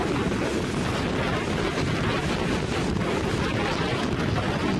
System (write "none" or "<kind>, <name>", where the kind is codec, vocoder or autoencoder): none